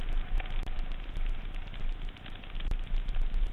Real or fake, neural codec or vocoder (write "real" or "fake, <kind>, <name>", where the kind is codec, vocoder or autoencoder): real